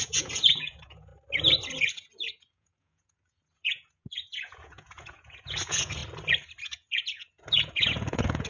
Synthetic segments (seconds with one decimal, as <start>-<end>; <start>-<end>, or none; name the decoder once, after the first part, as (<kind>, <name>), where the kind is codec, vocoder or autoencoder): 0.0-1.1 (vocoder, Vocos); 1.8-6.0; 6.6-8.5